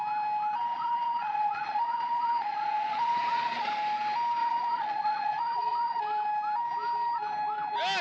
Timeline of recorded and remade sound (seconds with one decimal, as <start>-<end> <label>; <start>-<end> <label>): 0.0-0.7 recorded; 0.7-3.7 remade; 3.7-4.4 recorded; 4.4-6.0 remade; 6.0-8.0 recorded